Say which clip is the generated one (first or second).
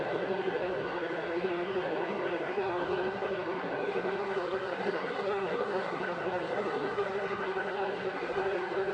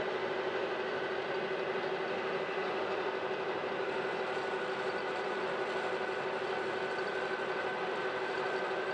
first